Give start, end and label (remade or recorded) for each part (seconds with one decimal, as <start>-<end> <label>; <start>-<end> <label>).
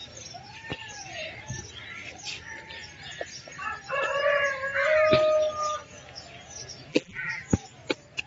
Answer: 0.0-6.9 recorded; 6.9-7.4 remade; 7.4-8.3 recorded